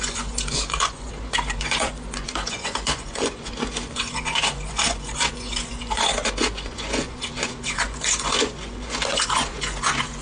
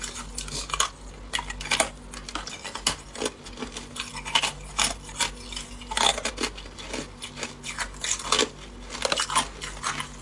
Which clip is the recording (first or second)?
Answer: second